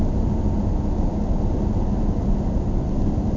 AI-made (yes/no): no